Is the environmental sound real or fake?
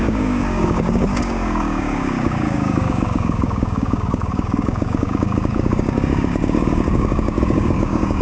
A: fake